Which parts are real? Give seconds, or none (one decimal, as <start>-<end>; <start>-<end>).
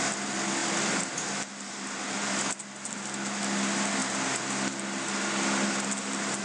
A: 0.0-4.0; 4.7-6.4